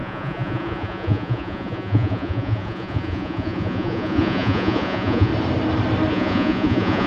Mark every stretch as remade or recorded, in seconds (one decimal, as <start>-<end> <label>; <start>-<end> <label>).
0.0-5.3 remade; 5.3-6.1 recorded; 6.1-7.1 remade